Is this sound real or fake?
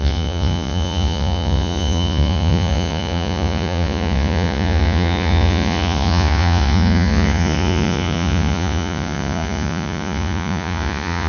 fake